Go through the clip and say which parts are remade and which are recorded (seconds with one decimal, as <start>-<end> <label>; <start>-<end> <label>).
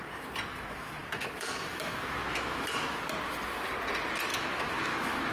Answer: 0.0-0.5 recorded; 0.5-3.0 remade; 3.0-4.3 recorded; 4.3-5.3 remade